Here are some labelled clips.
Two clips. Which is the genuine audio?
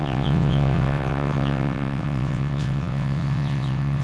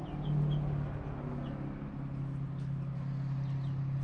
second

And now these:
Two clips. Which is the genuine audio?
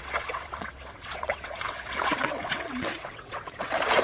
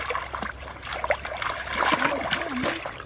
second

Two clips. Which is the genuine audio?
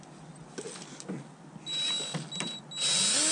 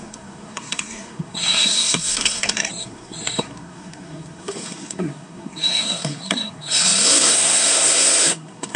first